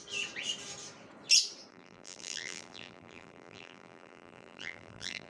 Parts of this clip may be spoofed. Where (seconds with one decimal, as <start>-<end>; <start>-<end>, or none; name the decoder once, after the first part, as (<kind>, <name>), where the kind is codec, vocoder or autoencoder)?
1.7-5.3 (vocoder, BigVGAN v2)

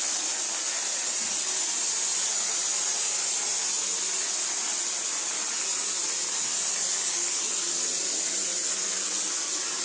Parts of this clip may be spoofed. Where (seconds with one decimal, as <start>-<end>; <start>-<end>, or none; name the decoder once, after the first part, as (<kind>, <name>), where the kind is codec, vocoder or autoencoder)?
4.6-5.4 (vocoder, BigVGAN v2)

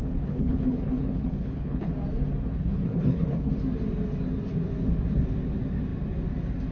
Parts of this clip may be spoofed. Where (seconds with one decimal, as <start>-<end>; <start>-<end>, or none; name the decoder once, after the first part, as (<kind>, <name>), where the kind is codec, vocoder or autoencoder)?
0.0-1.9 (codec, HILCodec); 2.5-3.5

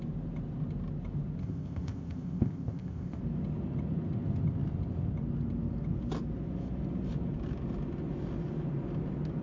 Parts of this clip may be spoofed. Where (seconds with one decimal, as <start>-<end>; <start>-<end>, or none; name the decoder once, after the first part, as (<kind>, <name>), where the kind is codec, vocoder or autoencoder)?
1.4-3.2 (codec, ZipCodec)